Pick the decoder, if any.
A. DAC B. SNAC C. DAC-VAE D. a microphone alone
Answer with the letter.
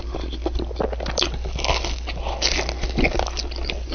D